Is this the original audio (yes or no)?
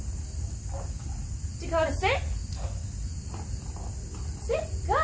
yes